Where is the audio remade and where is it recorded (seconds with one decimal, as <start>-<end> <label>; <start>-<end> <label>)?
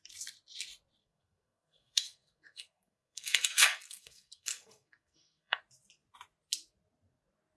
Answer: 0.0-1.0 recorded; 1.0-5.6 remade; 5.6-7.6 recorded